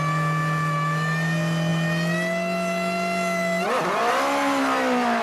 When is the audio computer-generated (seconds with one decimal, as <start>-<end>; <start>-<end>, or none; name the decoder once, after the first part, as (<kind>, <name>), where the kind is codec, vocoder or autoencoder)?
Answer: none